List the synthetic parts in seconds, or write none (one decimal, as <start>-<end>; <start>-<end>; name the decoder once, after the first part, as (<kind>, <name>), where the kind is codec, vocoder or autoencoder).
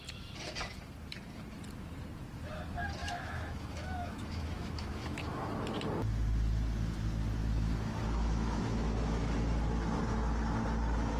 3.0-5.5 (autoencoder, DAC-VAE); 7.4-9.3